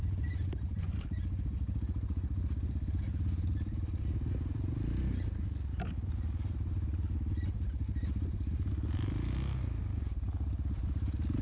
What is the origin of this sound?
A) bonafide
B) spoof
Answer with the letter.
A